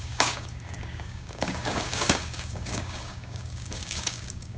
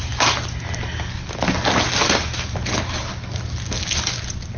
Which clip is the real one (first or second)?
second